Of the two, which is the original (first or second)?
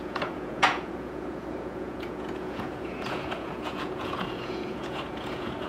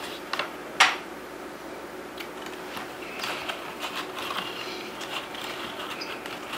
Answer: second